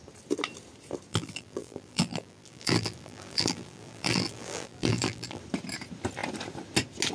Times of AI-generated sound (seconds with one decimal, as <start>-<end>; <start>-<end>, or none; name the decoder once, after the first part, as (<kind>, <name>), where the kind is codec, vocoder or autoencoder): 1.1-5.4 (vocoder, BigVGAN v2)